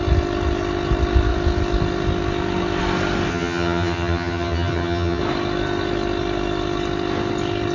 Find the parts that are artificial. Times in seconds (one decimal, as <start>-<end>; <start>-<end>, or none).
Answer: 3.3-5.2